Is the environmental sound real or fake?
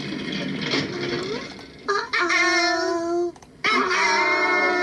real